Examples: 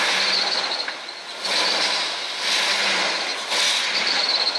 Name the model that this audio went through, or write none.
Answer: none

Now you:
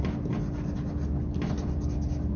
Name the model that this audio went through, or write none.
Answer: none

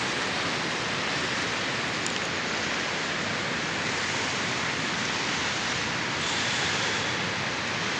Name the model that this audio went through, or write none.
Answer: none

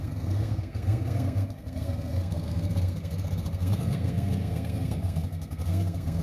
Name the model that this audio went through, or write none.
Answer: codec, SNAC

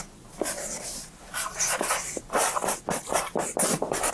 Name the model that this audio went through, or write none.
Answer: none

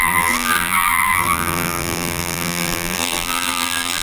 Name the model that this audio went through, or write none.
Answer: vocoder, BigVGAN v2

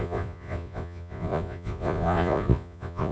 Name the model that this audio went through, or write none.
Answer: vocoder, Vocos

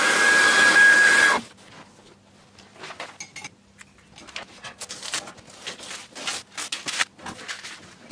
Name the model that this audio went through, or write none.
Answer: none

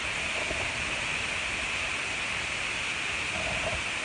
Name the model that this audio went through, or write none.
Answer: none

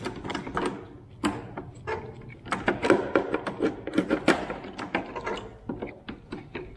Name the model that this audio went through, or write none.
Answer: none